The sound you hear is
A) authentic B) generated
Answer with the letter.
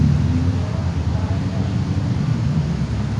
A